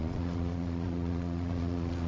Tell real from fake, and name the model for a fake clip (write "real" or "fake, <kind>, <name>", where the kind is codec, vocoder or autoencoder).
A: fake, vocoder, Vocos